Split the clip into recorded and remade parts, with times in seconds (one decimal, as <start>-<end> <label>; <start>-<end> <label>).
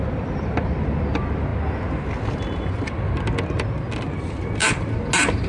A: 0.0-1.5 remade; 1.5-2.7 recorded; 2.7-4.6 remade; 4.6-5.5 recorded